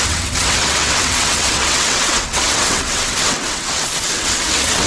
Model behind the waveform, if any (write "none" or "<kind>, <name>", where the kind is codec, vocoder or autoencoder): vocoder, WaveNeXt